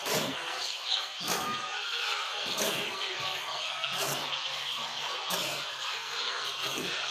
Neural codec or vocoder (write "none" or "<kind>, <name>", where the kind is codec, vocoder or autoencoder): codec, SNAC